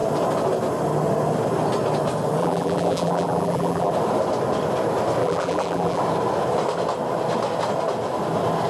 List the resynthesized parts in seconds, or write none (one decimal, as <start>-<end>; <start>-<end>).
2.4-3.9; 5.2-6.0